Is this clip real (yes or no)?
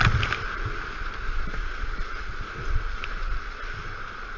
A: yes